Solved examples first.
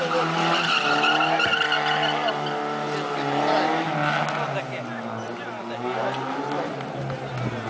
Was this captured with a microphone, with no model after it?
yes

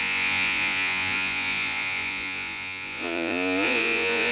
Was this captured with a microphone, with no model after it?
no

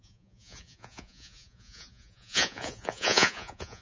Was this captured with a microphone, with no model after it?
no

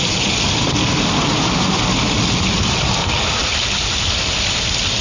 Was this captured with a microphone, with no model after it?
yes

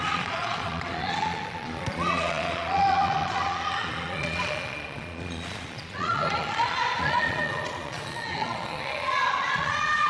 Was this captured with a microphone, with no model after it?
no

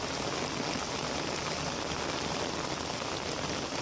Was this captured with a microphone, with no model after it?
yes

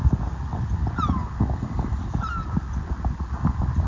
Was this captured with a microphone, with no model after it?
yes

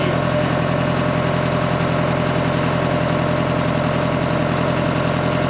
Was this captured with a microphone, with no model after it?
yes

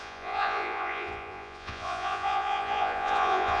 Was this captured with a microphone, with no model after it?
no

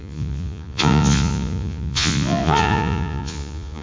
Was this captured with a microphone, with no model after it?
no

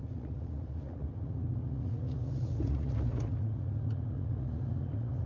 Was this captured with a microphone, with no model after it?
no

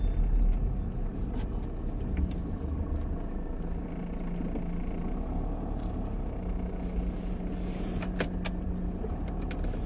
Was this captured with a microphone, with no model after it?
yes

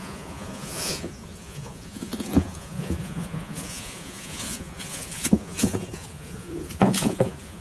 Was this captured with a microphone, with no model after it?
no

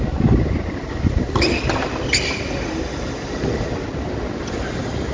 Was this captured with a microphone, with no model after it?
yes